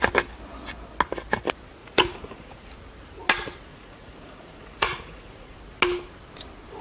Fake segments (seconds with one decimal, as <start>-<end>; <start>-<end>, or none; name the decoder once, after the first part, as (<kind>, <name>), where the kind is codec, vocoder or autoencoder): 1.8-2.7 (vocoder, Vocos); 3.7-5.6